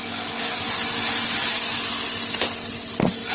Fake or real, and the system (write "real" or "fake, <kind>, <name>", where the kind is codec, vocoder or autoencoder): real